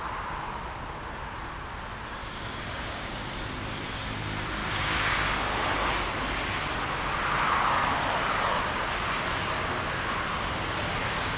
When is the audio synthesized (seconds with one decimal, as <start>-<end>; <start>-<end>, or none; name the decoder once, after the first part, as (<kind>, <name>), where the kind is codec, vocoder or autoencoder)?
2.2-3.1 (codec, DAC); 4.6-5.5